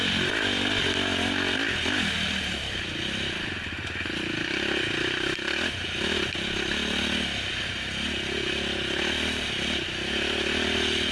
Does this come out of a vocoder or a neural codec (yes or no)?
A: no